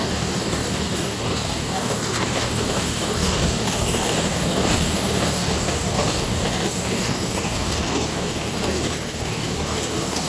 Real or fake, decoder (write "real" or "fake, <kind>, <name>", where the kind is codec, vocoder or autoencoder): fake, codec, DAC